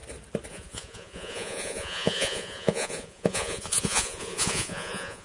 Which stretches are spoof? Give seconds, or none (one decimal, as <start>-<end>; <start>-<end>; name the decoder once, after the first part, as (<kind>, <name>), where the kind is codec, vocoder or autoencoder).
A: 0.5-5.2 (vocoder, Vocos)

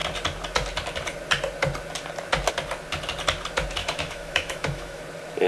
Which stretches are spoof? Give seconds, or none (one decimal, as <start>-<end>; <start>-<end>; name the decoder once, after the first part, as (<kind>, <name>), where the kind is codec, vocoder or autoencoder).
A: 3.8-5.0 (autoencoder, DAC-VAE)

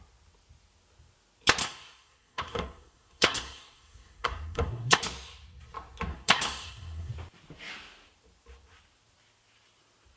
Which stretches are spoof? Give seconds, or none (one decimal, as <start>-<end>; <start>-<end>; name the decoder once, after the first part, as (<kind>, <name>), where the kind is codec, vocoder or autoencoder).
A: 1.6-5.0 (codec, SNAC); 6.1-7.1

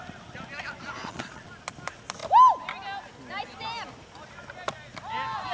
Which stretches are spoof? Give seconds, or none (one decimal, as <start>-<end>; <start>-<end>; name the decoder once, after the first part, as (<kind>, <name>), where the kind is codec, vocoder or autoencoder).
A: 1.0-1.5 (vocoder, Vocos)